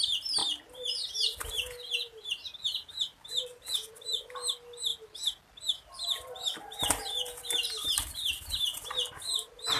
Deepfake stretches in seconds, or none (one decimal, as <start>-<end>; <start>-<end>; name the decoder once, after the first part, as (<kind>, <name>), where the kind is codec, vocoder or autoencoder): none